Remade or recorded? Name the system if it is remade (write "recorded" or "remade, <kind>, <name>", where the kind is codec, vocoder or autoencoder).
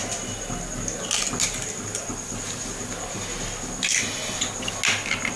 recorded